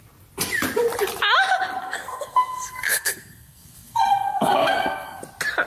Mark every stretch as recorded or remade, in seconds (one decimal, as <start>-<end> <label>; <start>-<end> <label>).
0.0-1.8 recorded; 1.8-5.2 remade; 5.2-5.7 recorded